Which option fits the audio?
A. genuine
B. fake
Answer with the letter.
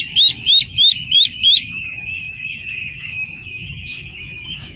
B